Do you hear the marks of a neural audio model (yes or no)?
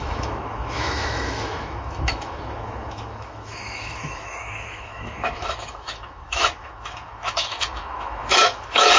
yes